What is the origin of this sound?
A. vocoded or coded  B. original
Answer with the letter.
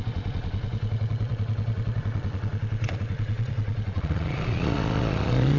A